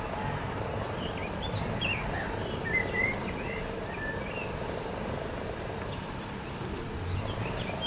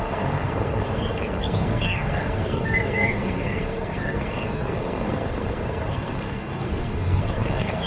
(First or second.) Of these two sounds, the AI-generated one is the second